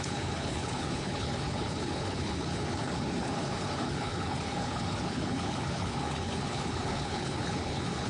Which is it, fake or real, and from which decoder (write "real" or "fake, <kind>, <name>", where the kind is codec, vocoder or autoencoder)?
fake, codec, HILCodec